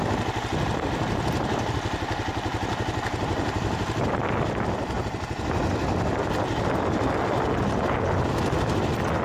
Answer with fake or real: real